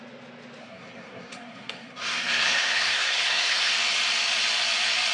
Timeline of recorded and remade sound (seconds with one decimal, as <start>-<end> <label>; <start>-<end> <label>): 0.0-0.6 recorded; 0.6-3.7 remade; 3.7-5.1 recorded